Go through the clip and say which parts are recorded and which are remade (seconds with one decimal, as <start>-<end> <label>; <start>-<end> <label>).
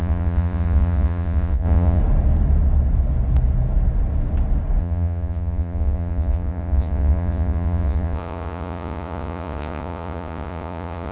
0.0-2.0 remade; 2.0-4.8 recorded; 4.8-11.1 remade